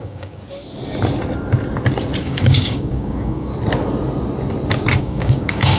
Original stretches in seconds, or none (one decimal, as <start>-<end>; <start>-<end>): 0.4-2.2; 3.5-5.0